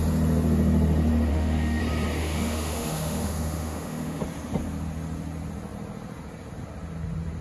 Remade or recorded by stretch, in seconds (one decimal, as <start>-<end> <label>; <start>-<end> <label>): 0.0-1.3 recorded; 1.3-1.8 remade; 1.8-2.2 recorded; 2.2-4.2 remade; 4.2-7.4 recorded